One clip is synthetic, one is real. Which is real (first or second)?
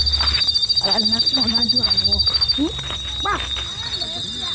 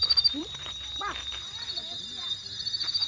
first